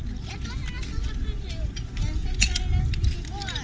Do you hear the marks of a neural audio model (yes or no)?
no